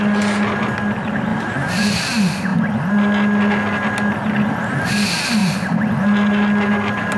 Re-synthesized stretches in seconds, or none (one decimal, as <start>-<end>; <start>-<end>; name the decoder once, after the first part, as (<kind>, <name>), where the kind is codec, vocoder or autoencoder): 1.3-2.0 (vocoder, BigVGAN v2)

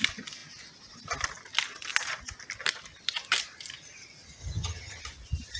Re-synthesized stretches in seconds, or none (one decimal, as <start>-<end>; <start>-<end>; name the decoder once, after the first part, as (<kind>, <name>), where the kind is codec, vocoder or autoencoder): 4.4-5.0 (vocoder, HiFi-GAN)

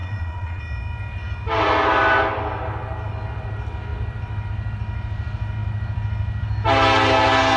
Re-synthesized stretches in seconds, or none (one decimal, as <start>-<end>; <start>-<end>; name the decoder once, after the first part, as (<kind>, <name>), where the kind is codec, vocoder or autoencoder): 0.0-0.6 (vocoder, Vocos)

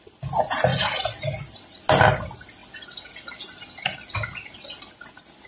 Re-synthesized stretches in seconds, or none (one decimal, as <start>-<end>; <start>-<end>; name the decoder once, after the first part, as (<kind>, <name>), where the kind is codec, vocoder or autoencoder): none

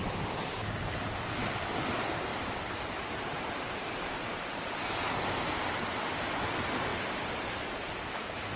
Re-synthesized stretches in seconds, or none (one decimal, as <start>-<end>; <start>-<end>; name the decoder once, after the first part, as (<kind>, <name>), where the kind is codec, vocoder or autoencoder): 2.3-5.3 (vocoder, BigVGAN v2)